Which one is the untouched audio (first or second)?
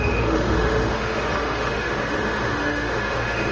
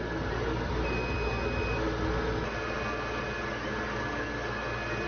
second